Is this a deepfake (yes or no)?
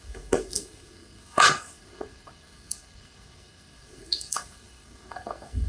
yes